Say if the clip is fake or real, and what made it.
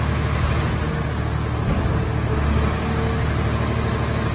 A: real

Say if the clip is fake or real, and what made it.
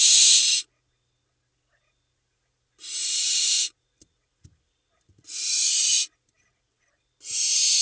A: real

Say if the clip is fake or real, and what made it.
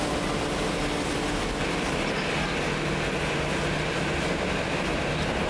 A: real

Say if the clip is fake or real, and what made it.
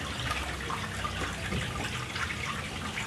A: real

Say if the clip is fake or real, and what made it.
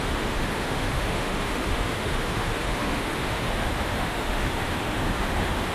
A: fake, autoencoder, DAC-VAE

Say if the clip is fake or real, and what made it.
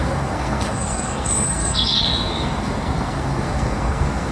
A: fake, codec, SNAC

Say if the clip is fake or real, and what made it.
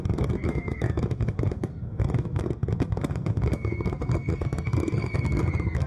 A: fake, codec, SNAC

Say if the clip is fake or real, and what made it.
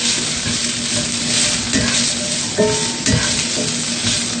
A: real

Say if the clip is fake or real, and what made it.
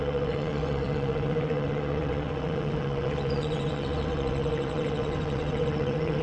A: fake, vocoder, WaveNeXt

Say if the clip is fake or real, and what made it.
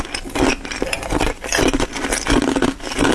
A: real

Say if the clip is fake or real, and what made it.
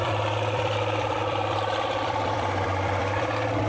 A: fake, vocoder, BigVGAN v2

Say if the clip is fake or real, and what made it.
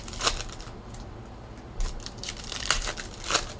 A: fake, vocoder, BigVGAN v2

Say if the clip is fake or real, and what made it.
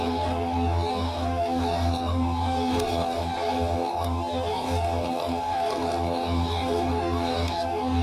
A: fake, codec, DAC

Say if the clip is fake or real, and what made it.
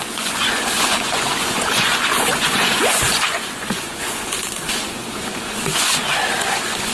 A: fake, vocoder, Vocos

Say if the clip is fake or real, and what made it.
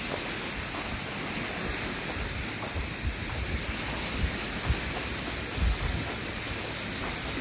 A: real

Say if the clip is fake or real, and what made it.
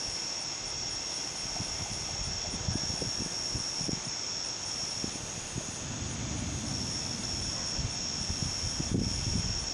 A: real